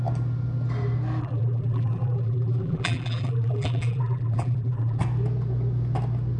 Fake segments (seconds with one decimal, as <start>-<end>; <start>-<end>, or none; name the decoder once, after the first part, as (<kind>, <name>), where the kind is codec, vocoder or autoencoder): 1.2-5.0 (vocoder, BigVGAN v2)